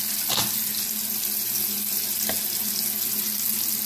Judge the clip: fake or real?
real